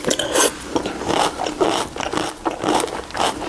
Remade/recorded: recorded